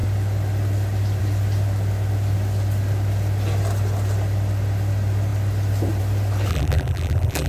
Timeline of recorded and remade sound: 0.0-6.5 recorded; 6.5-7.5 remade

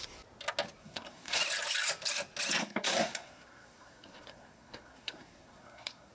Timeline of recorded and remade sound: 0.0-0.8 recorded; 0.8-1.4 remade; 1.4-2.6 recorded; 2.6-6.1 remade